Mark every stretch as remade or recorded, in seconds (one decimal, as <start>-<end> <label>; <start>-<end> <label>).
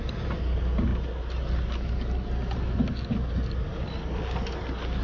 0.0-5.0 recorded